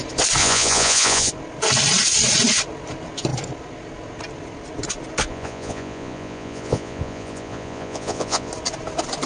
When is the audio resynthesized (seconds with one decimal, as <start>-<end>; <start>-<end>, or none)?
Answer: 0.4-1.3; 5.3-8.5